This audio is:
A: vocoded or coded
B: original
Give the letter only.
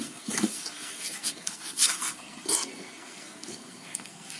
A